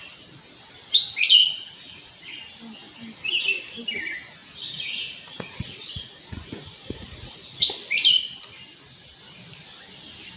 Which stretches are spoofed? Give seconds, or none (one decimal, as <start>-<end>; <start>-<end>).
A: 1.4-2.4; 4.4-7.6